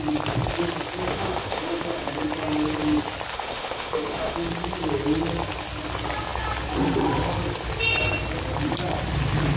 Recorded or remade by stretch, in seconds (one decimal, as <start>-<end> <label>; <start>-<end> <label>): 0.0-1.1 recorded; 1.1-2.1 remade; 2.1-3.3 recorded; 3.3-4.5 remade; 4.5-9.6 recorded